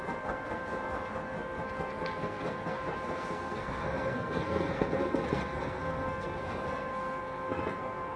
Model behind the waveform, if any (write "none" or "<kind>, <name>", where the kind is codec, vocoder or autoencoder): codec, SNAC